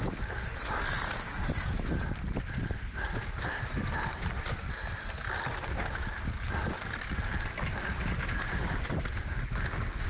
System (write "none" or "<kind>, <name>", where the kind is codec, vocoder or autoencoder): none